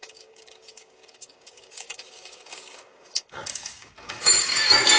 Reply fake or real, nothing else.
fake